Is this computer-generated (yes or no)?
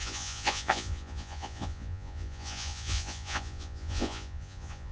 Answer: yes